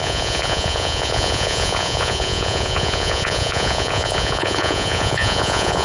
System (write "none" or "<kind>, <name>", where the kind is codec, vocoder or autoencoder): vocoder, Vocos